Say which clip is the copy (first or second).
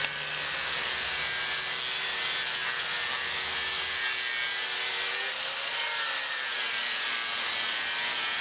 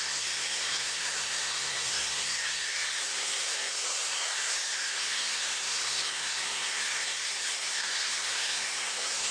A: second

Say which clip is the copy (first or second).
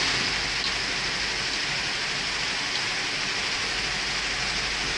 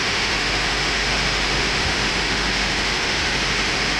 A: second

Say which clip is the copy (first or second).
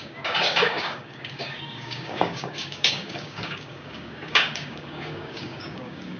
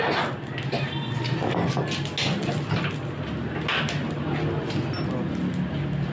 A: first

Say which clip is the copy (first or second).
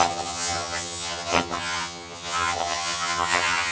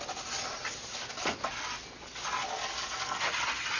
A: first